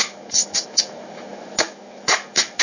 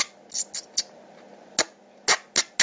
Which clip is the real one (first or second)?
second